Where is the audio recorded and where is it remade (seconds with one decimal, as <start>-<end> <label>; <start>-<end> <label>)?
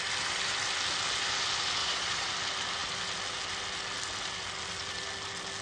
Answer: 0.0-1.8 recorded; 1.8-2.3 remade; 2.3-5.6 recorded